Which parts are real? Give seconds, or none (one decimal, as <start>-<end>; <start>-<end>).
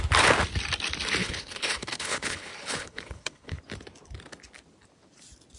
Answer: 0.0-1.2; 3.6-5.6